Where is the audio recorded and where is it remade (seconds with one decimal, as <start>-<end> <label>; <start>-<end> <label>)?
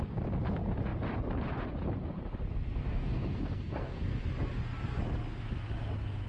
0.0-2.8 recorded; 2.8-4.2 remade; 4.2-6.3 recorded